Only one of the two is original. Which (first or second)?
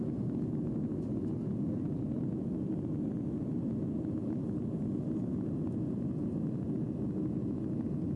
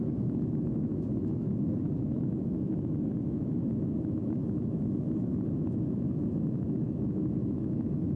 first